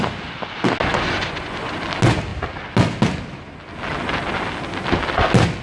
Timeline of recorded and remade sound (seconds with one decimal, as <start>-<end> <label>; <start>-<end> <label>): 0.0-0.9 recorded; 0.9-1.7 remade; 1.7-5.6 recorded